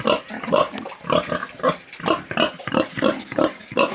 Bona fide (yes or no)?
yes